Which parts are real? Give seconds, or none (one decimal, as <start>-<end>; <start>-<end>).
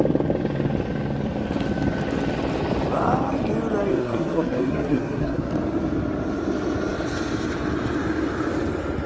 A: 0.0-3.9; 5.5-9.1